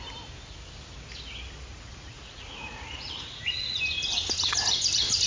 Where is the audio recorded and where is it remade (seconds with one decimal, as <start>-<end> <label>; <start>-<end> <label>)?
0.0-1.7 recorded; 1.7-3.8 remade; 3.8-5.3 recorded